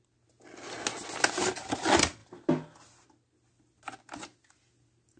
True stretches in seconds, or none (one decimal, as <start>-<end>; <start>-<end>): 0.0-5.2